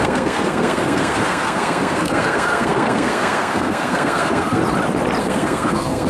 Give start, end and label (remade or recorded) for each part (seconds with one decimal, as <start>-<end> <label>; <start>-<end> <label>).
0.0-4.6 remade; 4.6-5.2 recorded; 5.2-6.1 remade